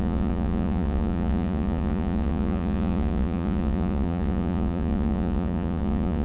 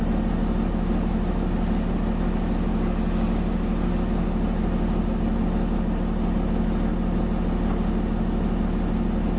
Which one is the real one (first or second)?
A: second